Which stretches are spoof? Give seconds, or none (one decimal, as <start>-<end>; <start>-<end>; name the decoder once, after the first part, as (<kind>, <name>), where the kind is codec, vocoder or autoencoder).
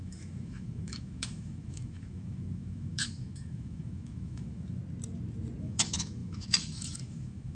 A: 0.0-4.8 (autoencoder, DAC-VAE); 5.6-7.5